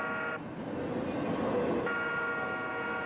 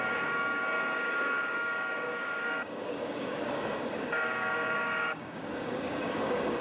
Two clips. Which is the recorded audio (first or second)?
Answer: first